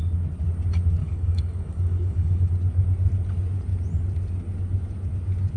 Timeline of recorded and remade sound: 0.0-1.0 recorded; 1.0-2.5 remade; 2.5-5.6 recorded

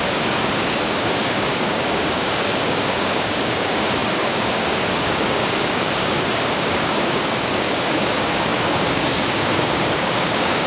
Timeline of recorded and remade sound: 0.0-10.7 remade

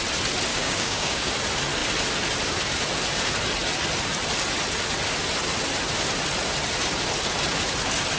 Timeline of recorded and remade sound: 0.0-0.5 recorded; 0.5-1.3 remade; 1.3-8.2 recorded

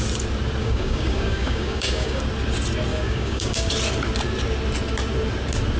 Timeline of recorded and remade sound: 0.0-0.6 recorded; 0.6-2.2 remade; 2.2-2.9 recorded; 2.9-3.7 remade; 3.7-5.8 recorded

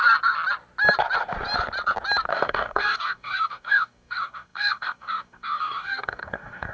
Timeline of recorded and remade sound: 0.0-2.3 recorded; 2.3-6.7 remade

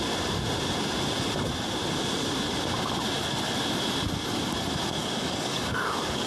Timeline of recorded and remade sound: 0.0-5.0 recorded; 5.0-6.3 remade